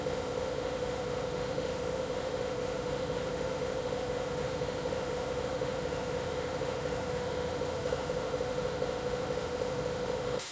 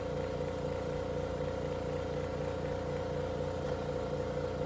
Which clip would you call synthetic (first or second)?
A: first